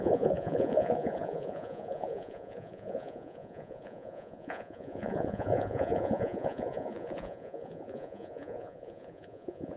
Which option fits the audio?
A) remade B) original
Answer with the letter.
A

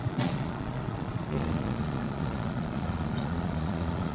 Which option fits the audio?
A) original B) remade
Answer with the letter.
B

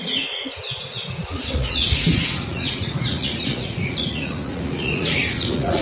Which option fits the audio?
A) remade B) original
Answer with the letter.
A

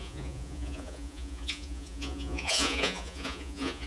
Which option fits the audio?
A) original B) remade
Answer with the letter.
B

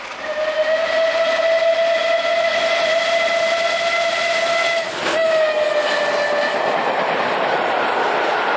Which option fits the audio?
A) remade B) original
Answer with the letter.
B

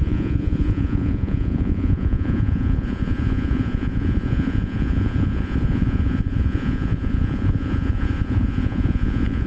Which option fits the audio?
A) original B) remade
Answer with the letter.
B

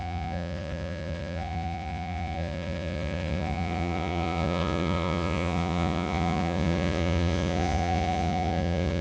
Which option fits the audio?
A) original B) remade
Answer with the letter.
B